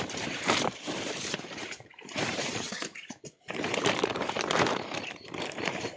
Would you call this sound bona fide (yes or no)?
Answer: no